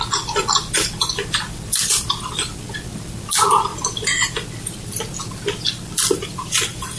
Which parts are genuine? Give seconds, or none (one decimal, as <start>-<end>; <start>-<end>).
none